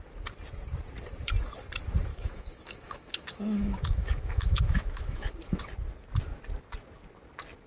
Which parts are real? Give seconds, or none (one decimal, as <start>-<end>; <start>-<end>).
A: 0.0-2.1; 5.6-7.7

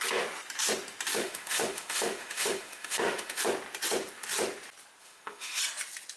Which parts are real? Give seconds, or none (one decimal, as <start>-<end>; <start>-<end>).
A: 0.0-1.2; 3.4-5.0; 5.6-6.2

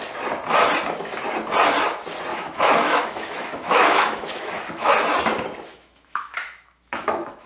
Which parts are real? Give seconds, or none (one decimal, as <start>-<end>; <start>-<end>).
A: 0.0-2.3; 4.9-5.7

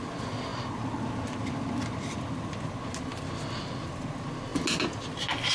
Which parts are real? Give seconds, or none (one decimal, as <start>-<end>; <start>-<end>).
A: 0.0-5.5

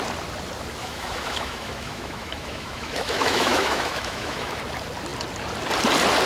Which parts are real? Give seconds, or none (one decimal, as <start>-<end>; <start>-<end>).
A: 0.0-0.8; 4.6-6.3

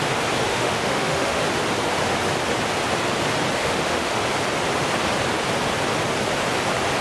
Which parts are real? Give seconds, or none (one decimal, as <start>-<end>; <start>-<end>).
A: 0.0-0.5; 1.4-3.6; 4.2-7.0

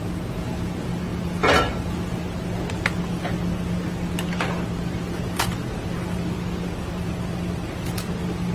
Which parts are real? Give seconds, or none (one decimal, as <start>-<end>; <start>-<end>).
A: 0.0-8.5